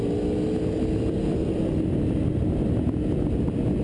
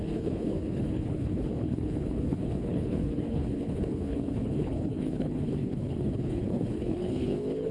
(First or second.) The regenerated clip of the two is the second